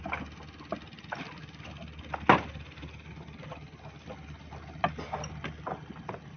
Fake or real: real